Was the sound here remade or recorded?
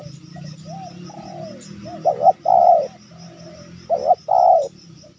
recorded